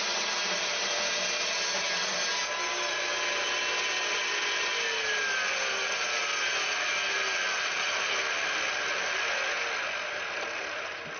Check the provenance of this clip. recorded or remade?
recorded